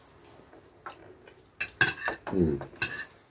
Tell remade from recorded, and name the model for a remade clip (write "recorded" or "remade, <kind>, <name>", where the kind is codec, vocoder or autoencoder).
recorded